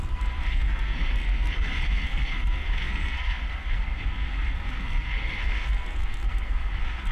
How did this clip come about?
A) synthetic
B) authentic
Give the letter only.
A